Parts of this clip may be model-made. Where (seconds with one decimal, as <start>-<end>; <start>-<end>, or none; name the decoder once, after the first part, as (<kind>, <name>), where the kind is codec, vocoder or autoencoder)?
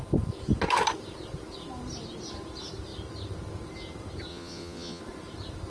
4.3-5.0 (vocoder, Vocos)